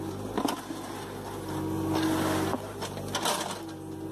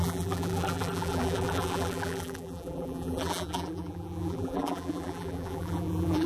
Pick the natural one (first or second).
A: first